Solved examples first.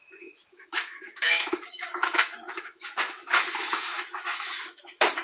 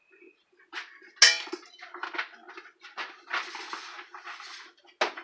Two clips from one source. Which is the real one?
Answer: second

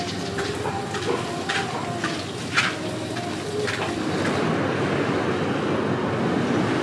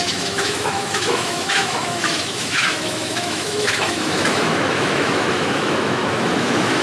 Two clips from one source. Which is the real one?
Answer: first